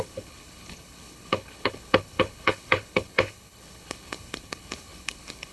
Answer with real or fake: fake